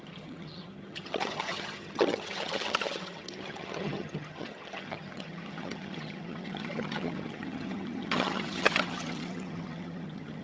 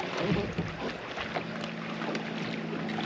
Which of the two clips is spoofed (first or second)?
first